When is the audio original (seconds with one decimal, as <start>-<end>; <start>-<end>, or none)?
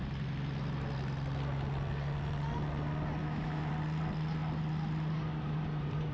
0.0-3.2; 3.7-6.1